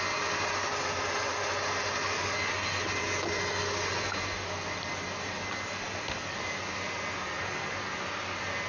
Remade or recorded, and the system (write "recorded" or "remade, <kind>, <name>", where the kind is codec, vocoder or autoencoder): recorded